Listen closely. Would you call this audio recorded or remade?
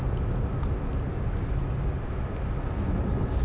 recorded